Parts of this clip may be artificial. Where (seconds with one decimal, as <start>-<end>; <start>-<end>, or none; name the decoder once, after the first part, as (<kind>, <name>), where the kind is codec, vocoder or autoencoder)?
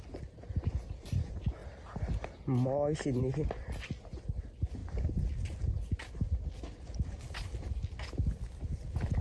none